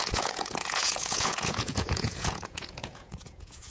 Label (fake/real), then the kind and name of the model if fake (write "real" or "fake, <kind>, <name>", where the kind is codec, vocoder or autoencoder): fake, vocoder, Vocos